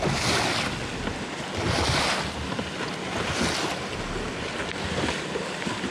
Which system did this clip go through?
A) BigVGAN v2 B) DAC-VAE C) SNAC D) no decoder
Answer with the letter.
D